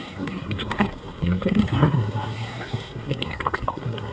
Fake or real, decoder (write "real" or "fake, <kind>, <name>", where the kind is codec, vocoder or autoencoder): fake, codec, SNAC